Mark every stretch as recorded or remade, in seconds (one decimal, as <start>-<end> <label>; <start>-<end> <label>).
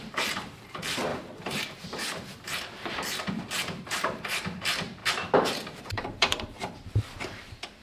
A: 0.0-2.3 remade; 2.3-3.6 recorded; 3.6-7.8 remade